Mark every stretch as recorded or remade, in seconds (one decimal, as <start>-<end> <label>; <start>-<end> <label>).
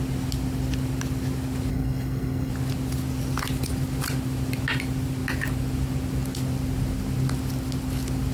0.0-1.7 recorded; 1.7-2.5 remade; 2.5-8.3 recorded